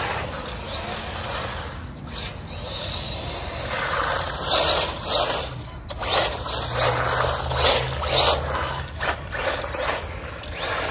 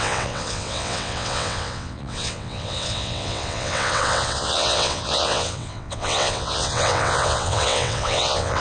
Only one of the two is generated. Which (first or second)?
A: second